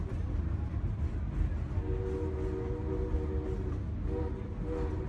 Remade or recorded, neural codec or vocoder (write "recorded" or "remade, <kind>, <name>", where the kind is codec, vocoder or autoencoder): recorded